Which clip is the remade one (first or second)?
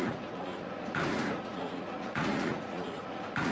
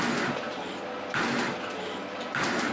first